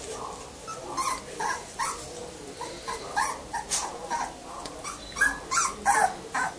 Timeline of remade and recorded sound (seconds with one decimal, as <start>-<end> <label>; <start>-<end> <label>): 0.0-0.7 recorded; 0.7-1.8 remade; 1.8-2.2 recorded; 2.2-5.0 remade; 5.0-6.6 recorded